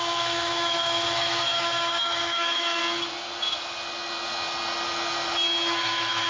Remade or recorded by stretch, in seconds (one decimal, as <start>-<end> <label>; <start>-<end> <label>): 0.0-2.8 remade; 2.8-5.8 recorded; 5.8-6.3 remade

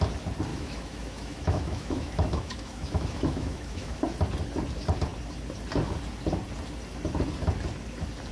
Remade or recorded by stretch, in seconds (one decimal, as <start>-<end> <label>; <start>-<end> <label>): 0.0-0.5 recorded; 0.5-4.0 remade; 4.0-8.3 recorded

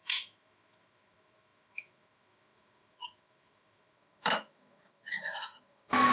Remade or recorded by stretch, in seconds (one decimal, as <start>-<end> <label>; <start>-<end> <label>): 0.0-6.1 remade

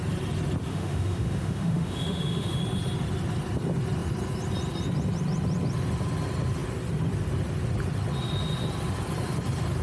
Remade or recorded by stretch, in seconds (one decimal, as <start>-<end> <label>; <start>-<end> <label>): 0.0-0.7 recorded; 0.7-2.6 remade; 2.6-9.8 recorded

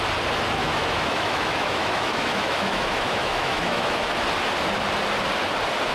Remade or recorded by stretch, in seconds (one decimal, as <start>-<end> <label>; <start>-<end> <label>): 0.0-0.6 recorded; 0.6-4.1 remade; 4.1-5.9 recorded